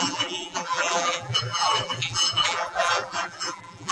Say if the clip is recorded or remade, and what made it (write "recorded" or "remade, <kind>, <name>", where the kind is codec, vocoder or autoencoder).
remade, vocoder, BigVGAN v2